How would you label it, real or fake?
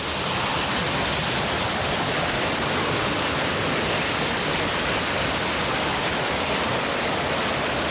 real